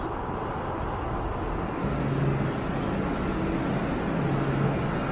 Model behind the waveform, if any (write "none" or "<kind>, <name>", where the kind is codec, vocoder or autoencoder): none